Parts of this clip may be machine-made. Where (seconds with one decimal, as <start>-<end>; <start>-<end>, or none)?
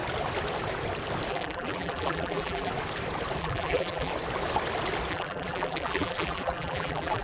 1.3-2.7; 3.4-4.1; 5.1-7.2